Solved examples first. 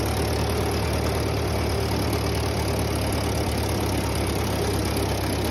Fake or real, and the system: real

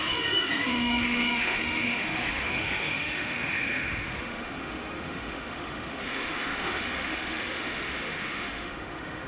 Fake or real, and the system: fake, autoencoder, DAC-VAE